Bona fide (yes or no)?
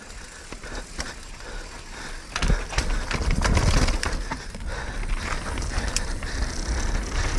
yes